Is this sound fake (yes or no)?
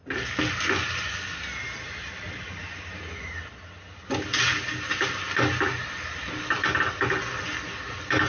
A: no